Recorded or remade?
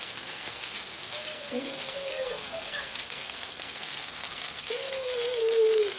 remade